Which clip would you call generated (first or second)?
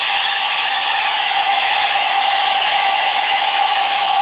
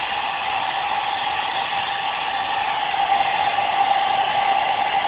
first